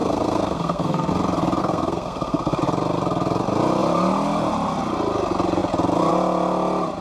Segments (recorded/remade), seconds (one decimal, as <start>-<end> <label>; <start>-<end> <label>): 0.0-1.1 remade; 1.1-1.6 recorded; 1.6-2.6 remade; 2.6-7.0 recorded